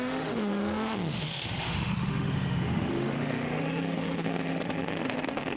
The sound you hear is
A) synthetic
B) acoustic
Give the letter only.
A